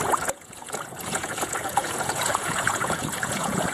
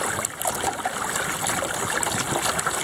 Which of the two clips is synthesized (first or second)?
first